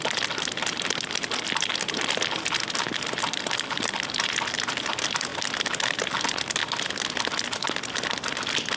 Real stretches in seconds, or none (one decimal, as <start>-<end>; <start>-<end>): 6.6-7.3